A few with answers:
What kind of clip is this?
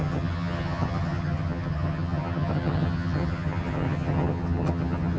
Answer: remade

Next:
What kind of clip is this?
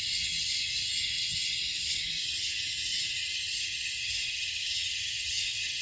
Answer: remade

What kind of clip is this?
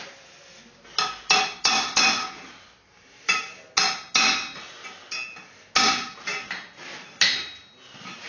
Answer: recorded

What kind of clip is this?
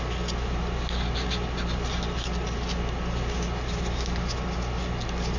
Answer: recorded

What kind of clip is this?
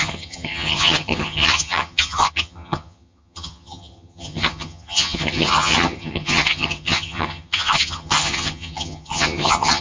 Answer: remade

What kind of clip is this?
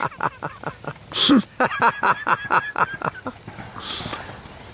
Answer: recorded